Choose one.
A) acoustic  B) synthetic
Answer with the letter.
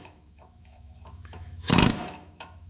B